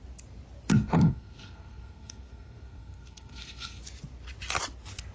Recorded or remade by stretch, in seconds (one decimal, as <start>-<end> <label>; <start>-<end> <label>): 0.0-0.7 recorded; 0.7-3.8 remade; 3.8-5.1 recorded

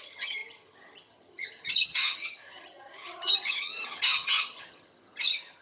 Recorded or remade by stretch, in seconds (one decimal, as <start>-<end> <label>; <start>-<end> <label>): 0.0-5.6 remade

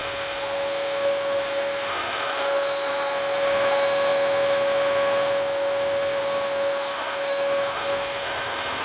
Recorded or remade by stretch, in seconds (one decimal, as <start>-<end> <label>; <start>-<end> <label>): 0.0-8.8 remade

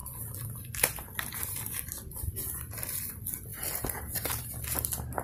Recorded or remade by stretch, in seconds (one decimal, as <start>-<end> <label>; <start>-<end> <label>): 0.0-5.2 recorded

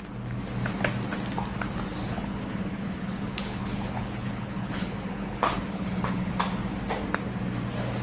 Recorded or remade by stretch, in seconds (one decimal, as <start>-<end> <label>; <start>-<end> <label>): 0.0-2.0 recorded; 2.0-6.3 remade; 6.3-8.0 recorded

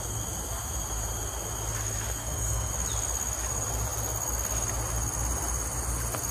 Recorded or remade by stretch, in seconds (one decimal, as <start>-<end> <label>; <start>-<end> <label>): 0.0-2.2 recorded; 2.2-2.7 remade; 2.7-6.3 recorded